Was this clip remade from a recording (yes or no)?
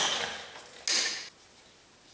no